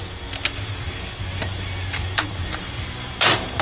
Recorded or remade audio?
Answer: recorded